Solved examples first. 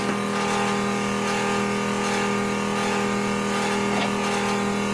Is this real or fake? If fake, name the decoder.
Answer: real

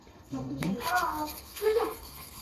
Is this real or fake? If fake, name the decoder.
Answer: fake, codec, SNAC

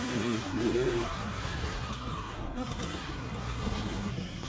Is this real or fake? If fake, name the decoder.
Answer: fake, codec, SNAC